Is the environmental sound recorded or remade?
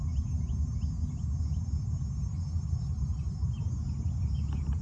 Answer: recorded